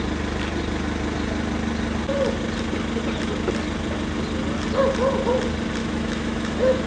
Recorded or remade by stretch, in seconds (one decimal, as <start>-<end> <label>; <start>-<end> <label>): 0.0-5.8 recorded; 5.8-6.9 remade